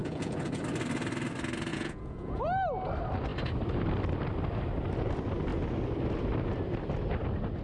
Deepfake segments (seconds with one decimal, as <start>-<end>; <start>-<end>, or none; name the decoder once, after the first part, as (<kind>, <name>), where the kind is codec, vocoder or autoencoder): 0.0-0.6 (vocoder, Vocos); 1.7-2.4